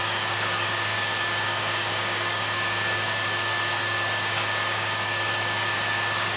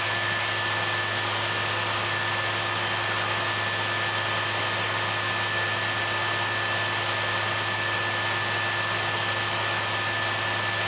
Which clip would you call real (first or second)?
second